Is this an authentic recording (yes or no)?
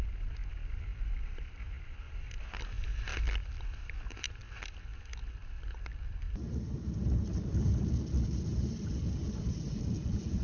yes